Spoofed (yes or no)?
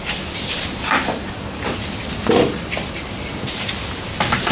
yes